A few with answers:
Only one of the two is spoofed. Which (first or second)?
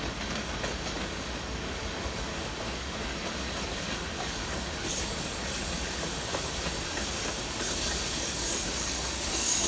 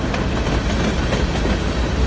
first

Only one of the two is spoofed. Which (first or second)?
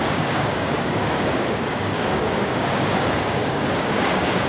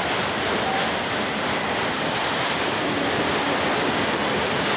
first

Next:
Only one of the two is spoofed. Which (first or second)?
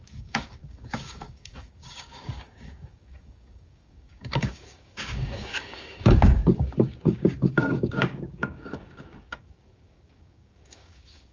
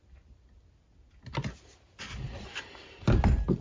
first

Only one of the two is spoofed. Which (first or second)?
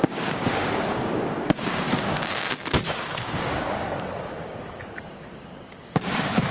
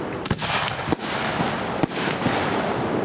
first